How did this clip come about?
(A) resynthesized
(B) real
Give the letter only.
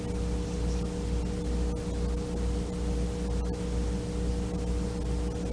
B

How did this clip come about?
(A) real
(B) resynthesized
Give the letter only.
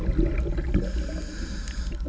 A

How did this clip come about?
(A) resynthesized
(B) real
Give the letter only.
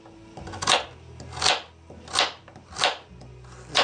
B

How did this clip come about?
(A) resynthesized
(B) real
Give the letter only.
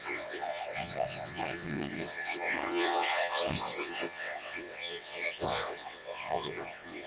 A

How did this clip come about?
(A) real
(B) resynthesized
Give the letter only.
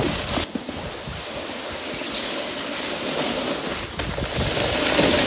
A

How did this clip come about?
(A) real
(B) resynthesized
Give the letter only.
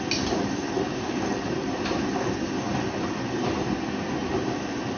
A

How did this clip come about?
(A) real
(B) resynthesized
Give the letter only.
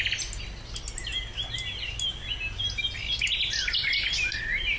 A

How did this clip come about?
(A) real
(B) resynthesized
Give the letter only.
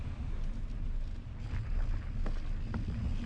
A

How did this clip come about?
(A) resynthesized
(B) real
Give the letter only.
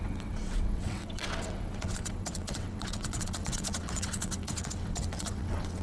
A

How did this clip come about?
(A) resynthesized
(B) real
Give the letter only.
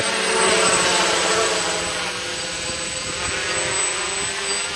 B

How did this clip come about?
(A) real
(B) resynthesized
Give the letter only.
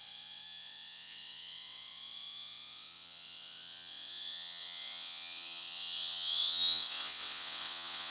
B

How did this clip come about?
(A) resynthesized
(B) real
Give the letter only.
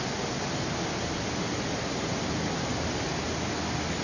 B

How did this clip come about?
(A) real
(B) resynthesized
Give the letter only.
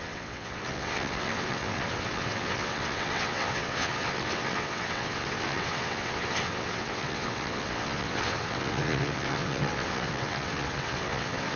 B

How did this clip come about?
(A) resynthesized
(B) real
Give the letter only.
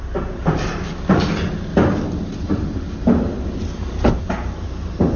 B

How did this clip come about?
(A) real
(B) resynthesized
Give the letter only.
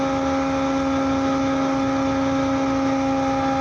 A